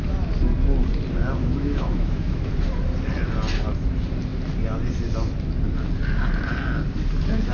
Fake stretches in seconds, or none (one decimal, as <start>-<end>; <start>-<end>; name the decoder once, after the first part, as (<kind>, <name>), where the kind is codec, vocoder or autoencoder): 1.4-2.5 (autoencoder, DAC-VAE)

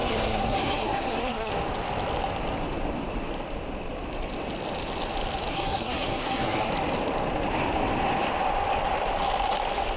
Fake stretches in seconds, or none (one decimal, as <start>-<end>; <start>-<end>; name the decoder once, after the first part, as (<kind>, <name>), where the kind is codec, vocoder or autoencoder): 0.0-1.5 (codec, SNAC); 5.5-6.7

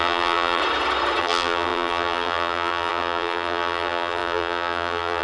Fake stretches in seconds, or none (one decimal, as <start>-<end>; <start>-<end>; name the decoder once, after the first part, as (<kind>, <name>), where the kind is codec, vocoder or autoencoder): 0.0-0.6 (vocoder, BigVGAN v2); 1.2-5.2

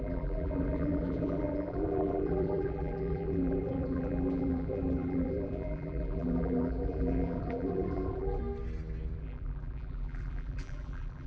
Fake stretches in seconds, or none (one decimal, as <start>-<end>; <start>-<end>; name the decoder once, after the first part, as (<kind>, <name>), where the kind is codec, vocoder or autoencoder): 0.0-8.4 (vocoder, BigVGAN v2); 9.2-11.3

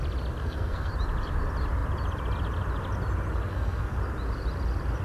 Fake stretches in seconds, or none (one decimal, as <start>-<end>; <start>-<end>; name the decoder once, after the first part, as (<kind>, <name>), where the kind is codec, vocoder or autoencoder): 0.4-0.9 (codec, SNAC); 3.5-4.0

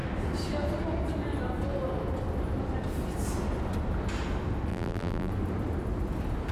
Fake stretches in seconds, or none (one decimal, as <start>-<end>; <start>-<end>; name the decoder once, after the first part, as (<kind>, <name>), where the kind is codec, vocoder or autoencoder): 4.7-5.3 (vocoder, BigVGAN v2)

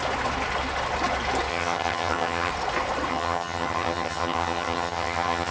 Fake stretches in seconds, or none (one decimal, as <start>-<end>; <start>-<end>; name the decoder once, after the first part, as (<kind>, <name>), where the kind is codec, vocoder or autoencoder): 1.5-2.5 (vocoder, HiFi-GAN); 3.1-5.5

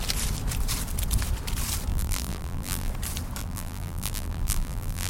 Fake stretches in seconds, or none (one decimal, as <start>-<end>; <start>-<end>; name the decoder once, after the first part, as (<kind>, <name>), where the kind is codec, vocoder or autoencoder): 1.9-2.9 (vocoder, BigVGAN v2); 3.4-5.1